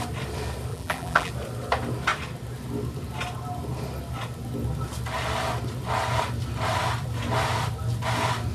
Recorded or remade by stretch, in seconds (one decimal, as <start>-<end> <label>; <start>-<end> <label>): 0.0-0.7 recorded; 0.7-1.3 remade; 1.3-8.5 recorded